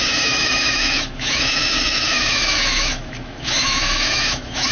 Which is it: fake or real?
fake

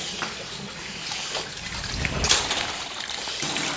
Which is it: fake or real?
real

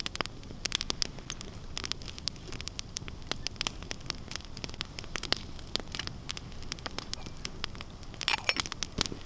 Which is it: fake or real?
real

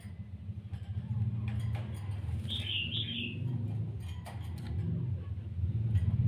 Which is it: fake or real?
real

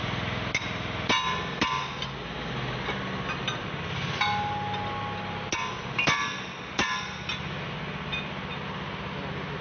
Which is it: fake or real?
real